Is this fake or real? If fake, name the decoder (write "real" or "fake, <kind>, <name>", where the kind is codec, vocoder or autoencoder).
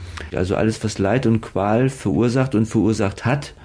real